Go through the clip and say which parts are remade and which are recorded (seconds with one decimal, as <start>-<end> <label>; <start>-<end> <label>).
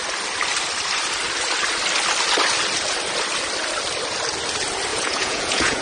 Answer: 0.0-4.9 recorded; 4.9-5.8 remade